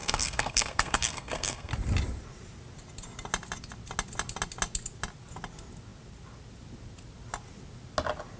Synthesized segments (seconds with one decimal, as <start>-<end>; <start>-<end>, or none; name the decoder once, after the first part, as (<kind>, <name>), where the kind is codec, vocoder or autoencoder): 0.0-1.7 (codec, SNAC)